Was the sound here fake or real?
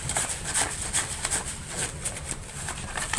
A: fake